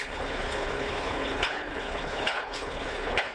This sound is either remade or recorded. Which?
remade